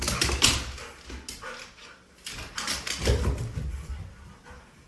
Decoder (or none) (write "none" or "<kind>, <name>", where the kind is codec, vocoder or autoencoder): none